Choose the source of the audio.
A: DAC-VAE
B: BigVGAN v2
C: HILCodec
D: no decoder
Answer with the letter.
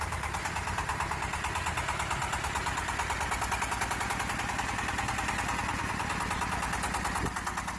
D